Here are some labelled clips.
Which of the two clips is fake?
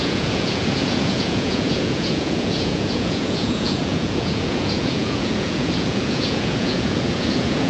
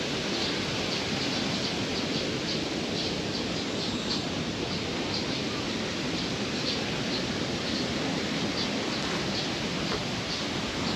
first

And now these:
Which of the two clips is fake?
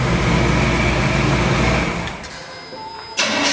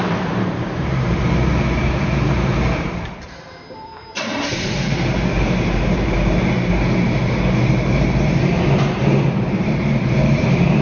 second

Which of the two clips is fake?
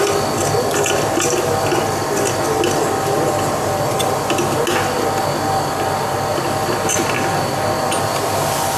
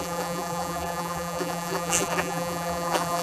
second